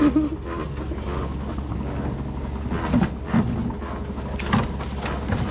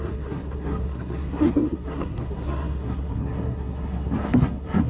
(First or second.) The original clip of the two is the first